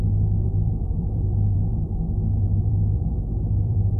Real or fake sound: fake